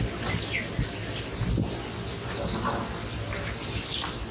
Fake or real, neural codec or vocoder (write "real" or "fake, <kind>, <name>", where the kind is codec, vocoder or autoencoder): real